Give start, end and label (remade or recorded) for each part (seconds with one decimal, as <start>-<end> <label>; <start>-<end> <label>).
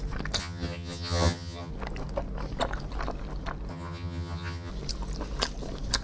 0.0-0.4 recorded; 0.4-1.7 remade; 1.7-3.7 recorded; 3.7-4.7 remade; 4.7-6.0 recorded